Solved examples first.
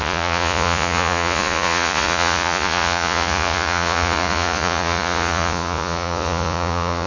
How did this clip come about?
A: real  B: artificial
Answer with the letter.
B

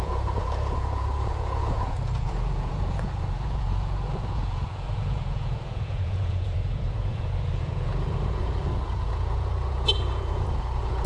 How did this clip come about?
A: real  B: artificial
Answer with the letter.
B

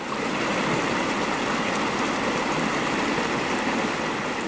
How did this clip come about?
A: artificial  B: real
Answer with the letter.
B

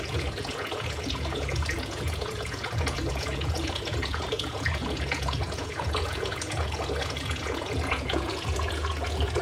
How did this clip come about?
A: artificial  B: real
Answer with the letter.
A